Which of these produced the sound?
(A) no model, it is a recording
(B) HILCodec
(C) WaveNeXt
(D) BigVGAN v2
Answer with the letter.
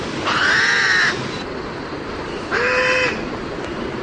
A